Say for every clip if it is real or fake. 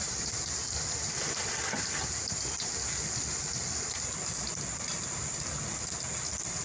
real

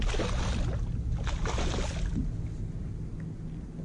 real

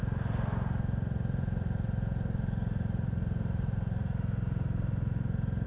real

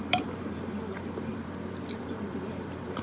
fake